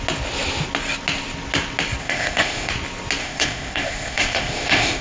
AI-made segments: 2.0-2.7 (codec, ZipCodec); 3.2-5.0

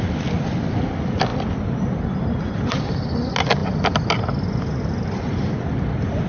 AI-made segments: none

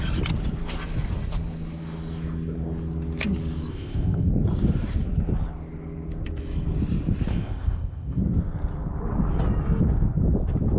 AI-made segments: 3.7-4.3 (codec, ZipCodec); 7.3-8.2

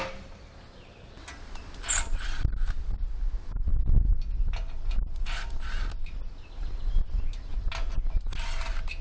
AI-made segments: none

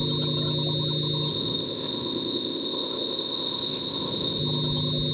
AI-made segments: 1.3-4.4 (codec, ZipCodec)

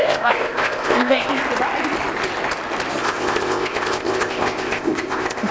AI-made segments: 0.0-1.4 (codec, ZipCodec); 3.0-5.5

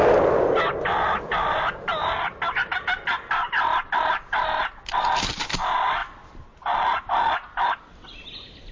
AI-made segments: none

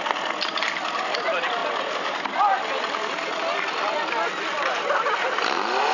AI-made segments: none